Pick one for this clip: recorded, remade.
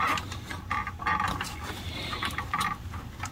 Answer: recorded